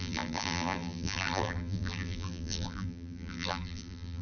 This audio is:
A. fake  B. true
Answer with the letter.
A